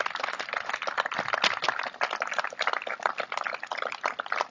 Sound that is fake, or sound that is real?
real